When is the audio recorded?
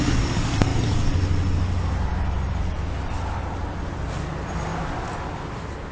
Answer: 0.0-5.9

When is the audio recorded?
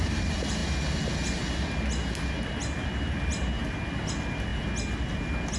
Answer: 0.0-5.6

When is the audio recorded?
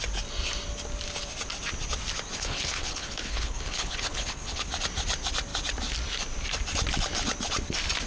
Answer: 0.0-2.3; 4.7-8.1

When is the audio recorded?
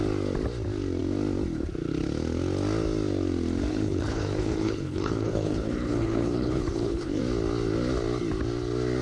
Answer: 0.0-3.7; 7.2-9.0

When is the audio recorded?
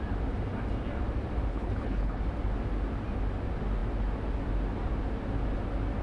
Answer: 0.0-1.5; 2.2-6.0